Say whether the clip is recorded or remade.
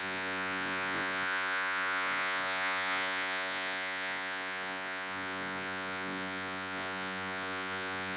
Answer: remade